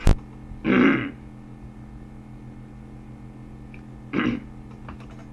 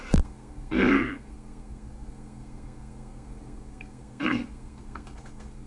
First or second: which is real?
first